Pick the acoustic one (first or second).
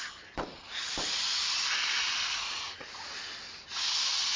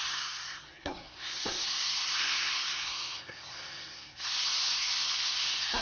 first